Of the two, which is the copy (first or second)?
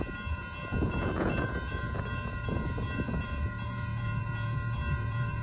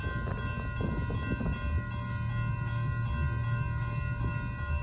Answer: first